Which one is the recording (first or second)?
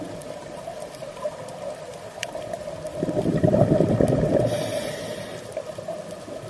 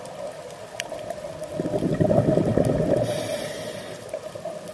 second